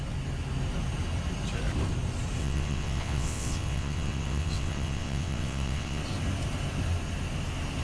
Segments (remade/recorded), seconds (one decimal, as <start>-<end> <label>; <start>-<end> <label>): 0.0-2.4 recorded; 2.4-6.0 remade; 6.0-7.8 recorded